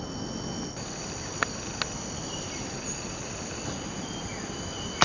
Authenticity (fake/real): real